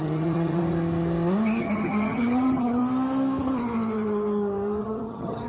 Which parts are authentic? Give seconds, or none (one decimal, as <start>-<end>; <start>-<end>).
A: 0.6-1.6; 2.8-4.8